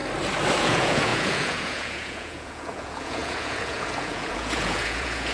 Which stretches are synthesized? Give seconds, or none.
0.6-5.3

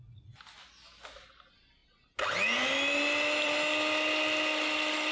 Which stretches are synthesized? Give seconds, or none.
none

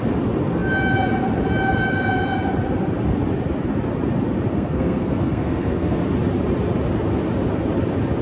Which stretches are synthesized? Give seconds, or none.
4.5-6.0

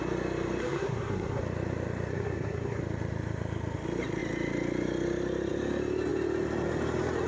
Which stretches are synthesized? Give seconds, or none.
0.6-1.4; 2.1-2.8

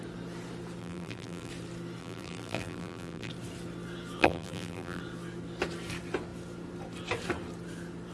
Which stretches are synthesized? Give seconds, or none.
0.8-1.5; 2.0-3.3; 4.2-5.0

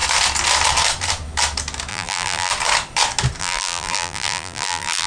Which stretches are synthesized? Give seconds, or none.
1.9-2.5; 3.4-5.1

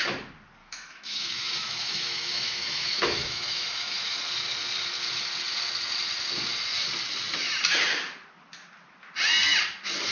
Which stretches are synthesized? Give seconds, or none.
0.6-4.0